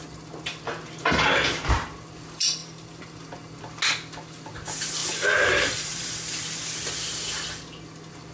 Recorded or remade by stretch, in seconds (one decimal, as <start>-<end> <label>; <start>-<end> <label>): 0.0-2.6 recorded; 2.6-3.2 remade; 3.2-5.0 recorded; 5.0-6.2 remade; 6.2-8.3 recorded